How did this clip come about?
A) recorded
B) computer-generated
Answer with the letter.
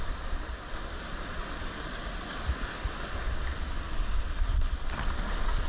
A